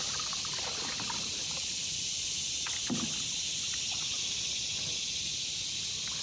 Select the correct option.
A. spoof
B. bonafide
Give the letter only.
B